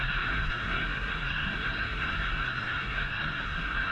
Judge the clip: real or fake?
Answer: fake